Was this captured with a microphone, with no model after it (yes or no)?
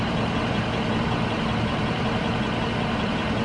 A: yes